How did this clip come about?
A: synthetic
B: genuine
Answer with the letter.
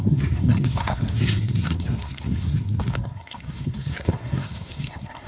A